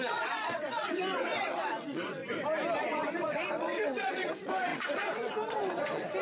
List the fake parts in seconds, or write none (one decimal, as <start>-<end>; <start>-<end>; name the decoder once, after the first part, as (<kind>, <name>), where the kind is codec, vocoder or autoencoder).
0.0-2.2 (vocoder, WaveNeXt); 2.8-6.2